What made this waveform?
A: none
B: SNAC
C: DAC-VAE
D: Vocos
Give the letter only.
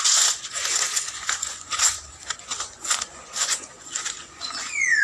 D